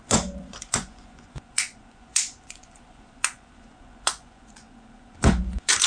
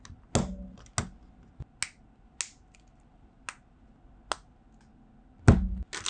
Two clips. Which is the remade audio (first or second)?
first